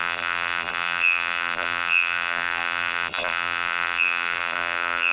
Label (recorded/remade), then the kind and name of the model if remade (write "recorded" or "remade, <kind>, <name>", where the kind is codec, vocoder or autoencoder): remade, vocoder, BigVGAN v2